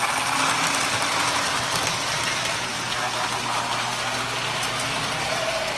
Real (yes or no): yes